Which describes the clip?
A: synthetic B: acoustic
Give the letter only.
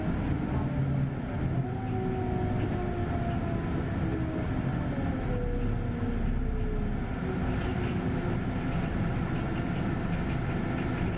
B